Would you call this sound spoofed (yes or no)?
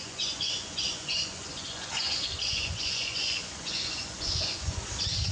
yes